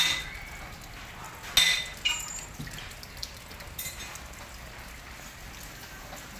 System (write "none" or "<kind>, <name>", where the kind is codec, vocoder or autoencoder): none